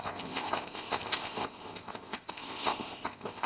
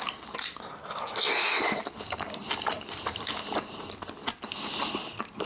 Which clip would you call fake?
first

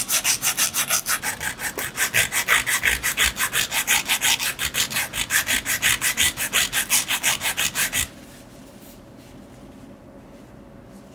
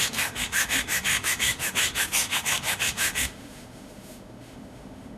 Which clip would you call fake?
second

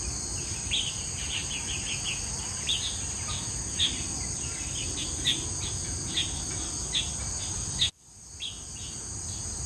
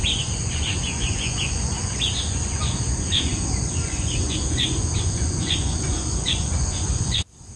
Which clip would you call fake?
second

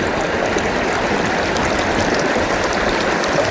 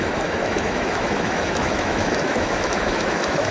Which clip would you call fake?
second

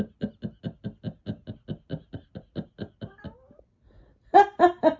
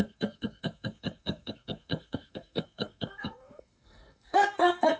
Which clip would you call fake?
second